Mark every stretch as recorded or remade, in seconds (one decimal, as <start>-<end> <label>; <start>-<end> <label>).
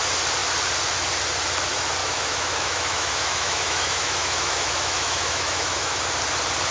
0.0-2.0 recorded; 2.0-6.0 remade; 6.0-6.7 recorded